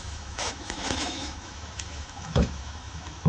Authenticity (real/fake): fake